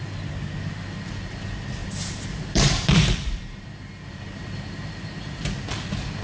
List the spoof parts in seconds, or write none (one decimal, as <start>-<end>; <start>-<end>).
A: 1.8-5.5